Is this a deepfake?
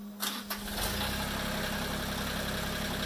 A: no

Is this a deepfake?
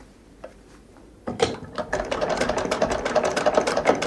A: yes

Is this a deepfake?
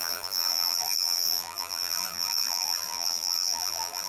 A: yes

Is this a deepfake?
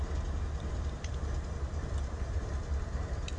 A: no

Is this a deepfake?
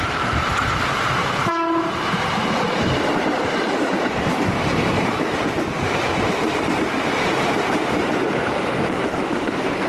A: yes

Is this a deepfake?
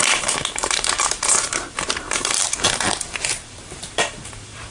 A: yes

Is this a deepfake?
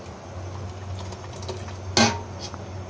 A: no